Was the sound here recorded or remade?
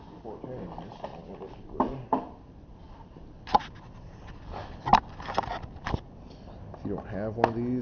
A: recorded